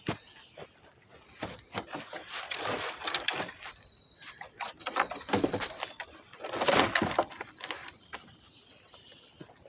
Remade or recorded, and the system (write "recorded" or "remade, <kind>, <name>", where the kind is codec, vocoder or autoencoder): remade, vocoder, BigVGAN v2